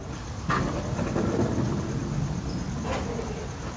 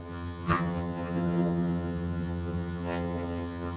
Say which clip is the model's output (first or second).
second